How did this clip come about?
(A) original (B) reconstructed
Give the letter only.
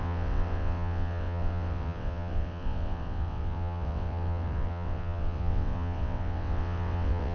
B